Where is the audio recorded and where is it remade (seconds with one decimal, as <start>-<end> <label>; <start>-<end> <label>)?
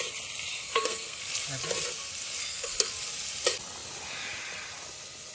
0.0-0.5 recorded; 0.5-1.2 remade; 1.2-2.4 recorded; 2.4-2.9 remade; 2.9-5.3 recorded